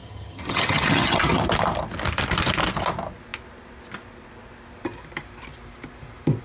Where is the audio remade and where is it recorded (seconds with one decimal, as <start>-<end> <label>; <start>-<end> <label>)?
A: 0.0-1.4 remade; 1.4-6.4 recorded